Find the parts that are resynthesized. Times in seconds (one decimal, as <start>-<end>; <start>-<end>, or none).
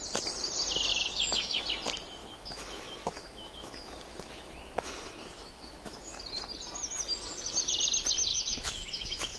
0.9-1.6; 2.2-6.2; 8.3-9.4